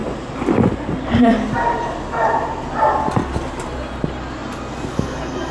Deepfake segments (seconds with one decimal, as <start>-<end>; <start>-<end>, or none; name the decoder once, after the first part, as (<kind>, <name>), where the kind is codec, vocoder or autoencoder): 0.0-2.6 (vocoder, BigVGAN v2)